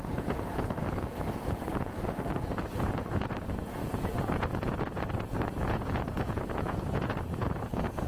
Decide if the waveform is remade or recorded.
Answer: remade